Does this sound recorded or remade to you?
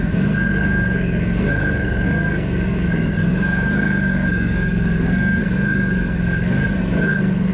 remade